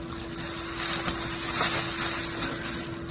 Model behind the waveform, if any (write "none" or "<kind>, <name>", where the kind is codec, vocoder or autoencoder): none